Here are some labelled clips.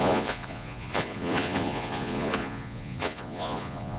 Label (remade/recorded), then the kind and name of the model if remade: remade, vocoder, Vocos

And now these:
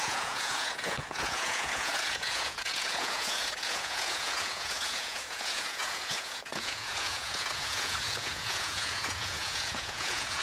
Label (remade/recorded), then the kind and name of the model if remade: remade, vocoder, Vocos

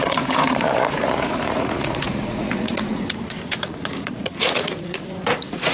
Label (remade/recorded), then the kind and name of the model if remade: remade, vocoder, Vocos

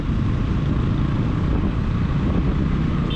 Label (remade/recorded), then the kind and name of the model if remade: recorded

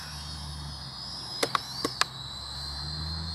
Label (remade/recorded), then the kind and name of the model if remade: recorded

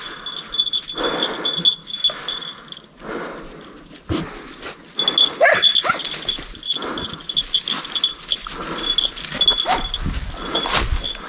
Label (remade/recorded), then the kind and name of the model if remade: recorded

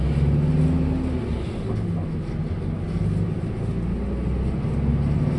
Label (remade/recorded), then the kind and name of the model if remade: recorded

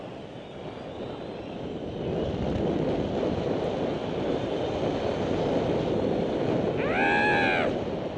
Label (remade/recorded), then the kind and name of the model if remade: recorded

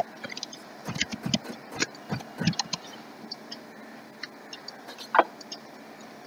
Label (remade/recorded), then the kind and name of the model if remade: recorded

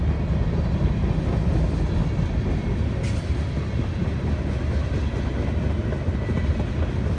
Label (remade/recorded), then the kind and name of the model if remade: recorded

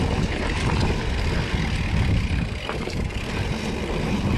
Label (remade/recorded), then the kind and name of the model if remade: recorded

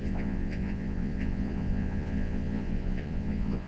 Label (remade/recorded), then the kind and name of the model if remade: remade, vocoder, Vocos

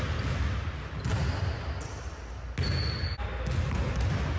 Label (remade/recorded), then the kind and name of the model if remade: recorded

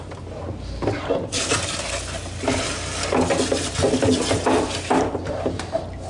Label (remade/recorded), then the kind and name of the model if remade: recorded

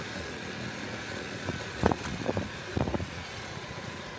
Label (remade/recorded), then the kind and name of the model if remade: remade, vocoder, Vocos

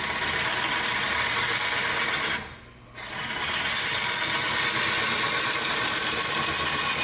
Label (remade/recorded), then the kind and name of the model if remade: recorded